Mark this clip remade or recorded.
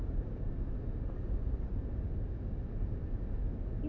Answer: recorded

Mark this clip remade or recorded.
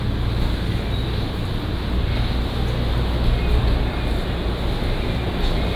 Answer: recorded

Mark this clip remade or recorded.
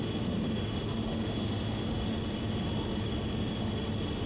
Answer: recorded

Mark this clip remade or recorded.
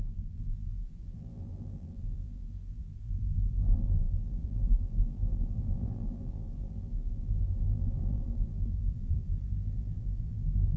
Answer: remade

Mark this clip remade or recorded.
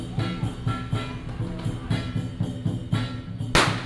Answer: recorded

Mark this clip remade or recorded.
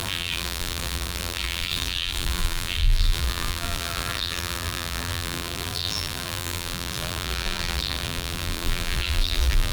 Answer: remade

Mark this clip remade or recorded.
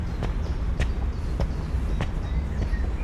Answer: recorded